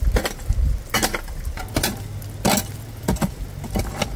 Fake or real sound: real